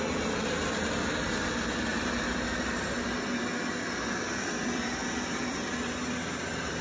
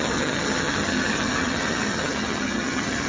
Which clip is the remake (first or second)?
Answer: second